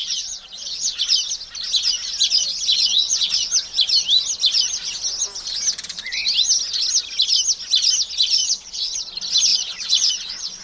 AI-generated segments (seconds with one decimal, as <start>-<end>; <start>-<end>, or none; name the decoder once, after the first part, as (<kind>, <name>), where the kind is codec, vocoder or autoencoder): 0.0-1.0 (vocoder, Vocos); 2.7-3.3; 8.4-9.1; 9.5-10.6